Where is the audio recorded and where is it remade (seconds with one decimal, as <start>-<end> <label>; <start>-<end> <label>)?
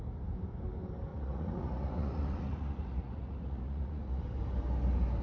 0.0-1.1 recorded; 1.1-4.2 remade; 4.2-5.2 recorded